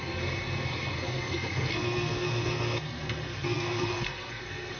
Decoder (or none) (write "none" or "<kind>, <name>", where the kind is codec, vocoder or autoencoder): codec, SNAC